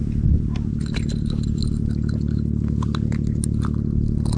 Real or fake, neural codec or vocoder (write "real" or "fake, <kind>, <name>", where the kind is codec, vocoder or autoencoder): real